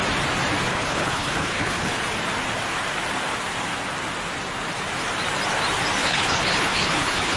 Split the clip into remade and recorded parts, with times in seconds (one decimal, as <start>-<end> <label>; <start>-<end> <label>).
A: 0.0-0.7 recorded; 0.7-2.0 remade; 2.0-6.0 recorded; 6.0-7.4 remade